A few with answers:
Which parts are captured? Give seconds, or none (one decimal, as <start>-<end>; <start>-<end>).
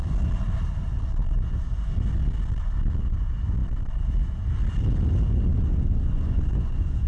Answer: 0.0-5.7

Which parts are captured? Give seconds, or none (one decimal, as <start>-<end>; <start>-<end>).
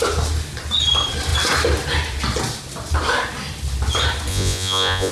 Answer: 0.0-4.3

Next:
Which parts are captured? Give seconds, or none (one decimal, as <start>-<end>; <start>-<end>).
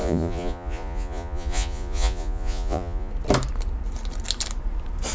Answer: 3.1-5.1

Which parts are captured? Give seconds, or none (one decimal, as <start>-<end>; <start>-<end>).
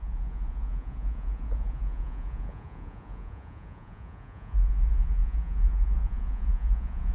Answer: none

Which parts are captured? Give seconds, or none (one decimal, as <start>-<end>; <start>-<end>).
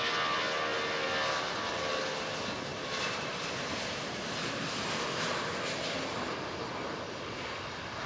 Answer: 0.0-8.1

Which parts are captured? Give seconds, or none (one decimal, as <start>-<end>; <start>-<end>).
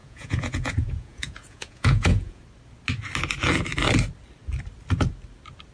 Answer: 2.4-5.7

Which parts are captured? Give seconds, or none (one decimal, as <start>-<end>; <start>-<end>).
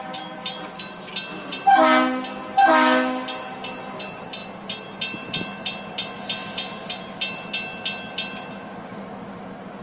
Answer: 0.0-9.8